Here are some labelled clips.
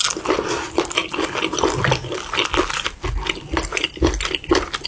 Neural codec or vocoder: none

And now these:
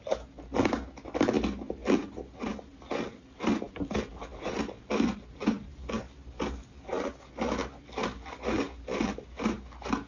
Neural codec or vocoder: none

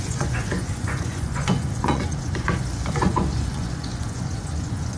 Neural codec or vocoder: vocoder, Vocos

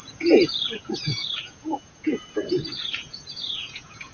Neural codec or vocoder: vocoder, Vocos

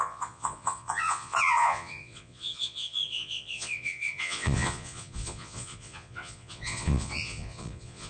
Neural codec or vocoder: vocoder, Vocos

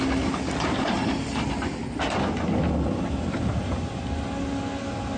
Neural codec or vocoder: none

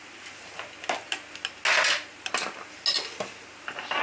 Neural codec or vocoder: none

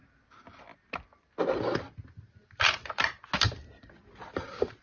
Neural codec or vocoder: none